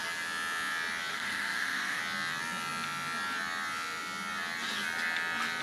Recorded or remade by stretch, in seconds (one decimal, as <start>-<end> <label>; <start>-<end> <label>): 0.0-1.1 recorded; 1.1-2.0 remade; 2.0-5.6 recorded

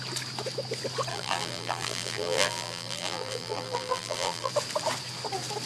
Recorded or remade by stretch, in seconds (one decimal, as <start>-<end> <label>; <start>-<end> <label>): 0.0-1.1 recorded; 1.1-4.5 remade; 4.5-5.7 recorded

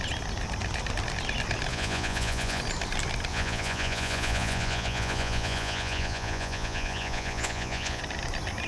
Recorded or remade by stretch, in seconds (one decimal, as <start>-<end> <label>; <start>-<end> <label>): 0.0-1.7 recorded; 1.7-2.6 remade; 2.6-3.3 recorded; 3.3-8.0 remade; 8.0-8.7 recorded

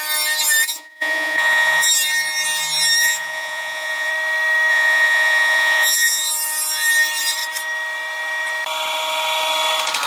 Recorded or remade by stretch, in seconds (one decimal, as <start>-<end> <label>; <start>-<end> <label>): 0.0-0.7 recorded; 0.7-1.9 remade; 1.9-3.0 recorded; 3.0-4.1 remade; 4.1-4.7 recorded; 4.7-6.2 remade; 6.2-10.1 recorded